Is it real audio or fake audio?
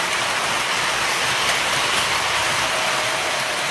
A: real